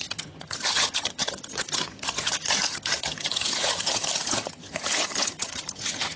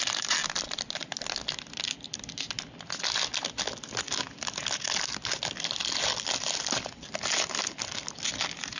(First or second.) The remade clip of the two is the first